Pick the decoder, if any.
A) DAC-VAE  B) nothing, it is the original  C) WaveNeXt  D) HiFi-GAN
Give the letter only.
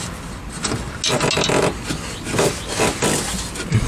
B